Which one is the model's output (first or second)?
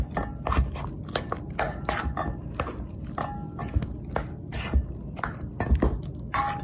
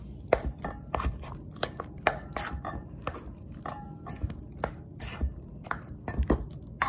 second